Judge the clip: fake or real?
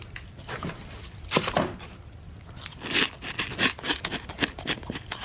real